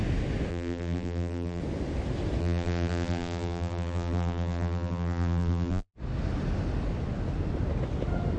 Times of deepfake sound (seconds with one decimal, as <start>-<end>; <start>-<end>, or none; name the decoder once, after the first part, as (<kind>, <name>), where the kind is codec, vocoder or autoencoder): 0.5-1.6 (vocoder, BigVGAN v2); 2.4-5.9